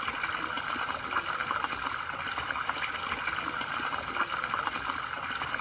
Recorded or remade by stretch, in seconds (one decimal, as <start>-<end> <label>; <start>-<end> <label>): 0.0-5.6 recorded